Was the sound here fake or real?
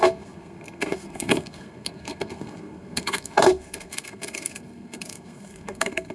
fake